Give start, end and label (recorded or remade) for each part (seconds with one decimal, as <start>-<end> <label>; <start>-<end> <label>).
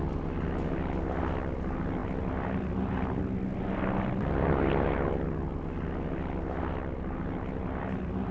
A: 0.0-8.3 recorded